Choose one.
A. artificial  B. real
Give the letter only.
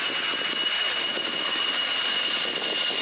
B